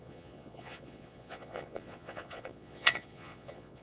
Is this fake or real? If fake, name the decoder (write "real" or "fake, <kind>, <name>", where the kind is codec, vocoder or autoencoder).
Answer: fake, vocoder, Vocos